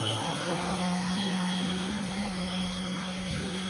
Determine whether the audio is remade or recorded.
remade